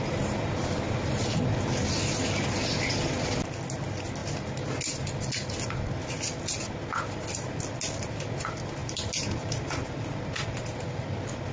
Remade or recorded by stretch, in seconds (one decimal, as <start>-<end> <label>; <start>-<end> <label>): 0.0-8.8 recorded; 8.8-9.9 remade; 9.9-11.5 recorded